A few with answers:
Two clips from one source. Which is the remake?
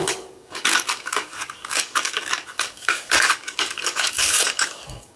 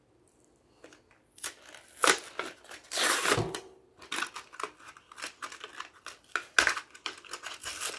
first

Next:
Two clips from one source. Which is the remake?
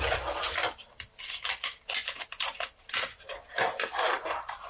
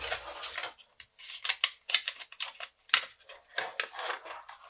first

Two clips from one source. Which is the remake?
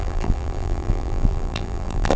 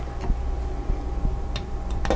first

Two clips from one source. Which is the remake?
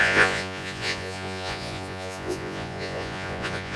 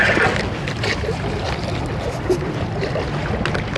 first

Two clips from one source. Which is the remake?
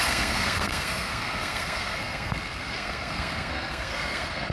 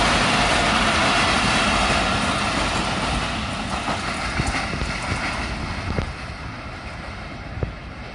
first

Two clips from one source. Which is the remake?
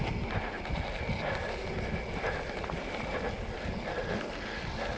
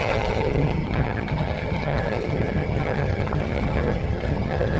second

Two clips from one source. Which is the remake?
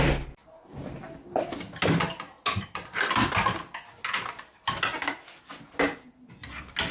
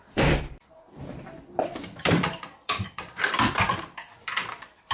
second